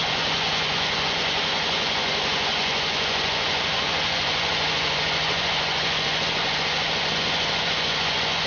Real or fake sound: fake